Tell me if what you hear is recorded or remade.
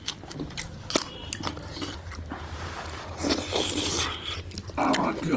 remade